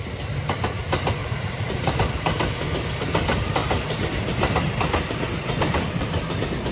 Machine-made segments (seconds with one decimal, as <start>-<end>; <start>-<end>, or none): 1.2-1.9